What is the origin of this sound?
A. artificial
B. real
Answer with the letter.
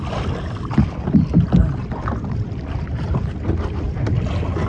A